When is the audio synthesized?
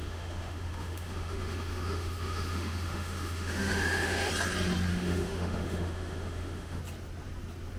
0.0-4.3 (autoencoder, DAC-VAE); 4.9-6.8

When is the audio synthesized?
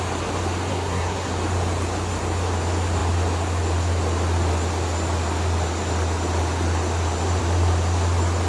0.7-1.3 (codec, SNAC)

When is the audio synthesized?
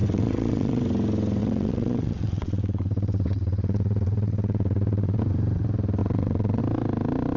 0.0-0.8 (vocoder, WaveNeXt); 1.4-5.2; 6.0-6.6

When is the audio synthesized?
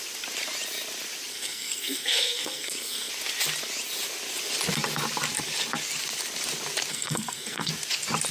1.3-3.1 (codec, SNAC); 6.9-7.7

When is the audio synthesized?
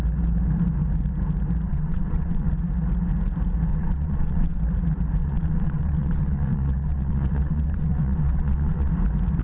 1.7-2.5 (vocoder, WaveNeXt); 3.7-4.6; 5.2-8.9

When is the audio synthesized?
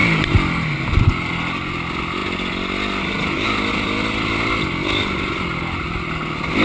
none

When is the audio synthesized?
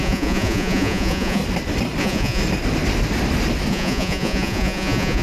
0.0-1.4 (vocoder, Vocos); 2.0-2.4; 3.7-5.2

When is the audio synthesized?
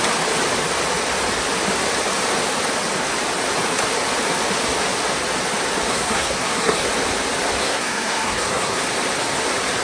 5.9-6.9 (codec, SNAC); 7.6-8.8